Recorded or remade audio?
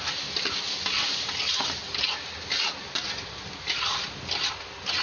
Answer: recorded